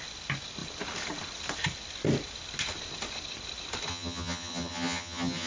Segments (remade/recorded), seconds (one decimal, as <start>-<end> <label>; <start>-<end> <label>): 0.0-3.9 recorded; 3.9-5.5 remade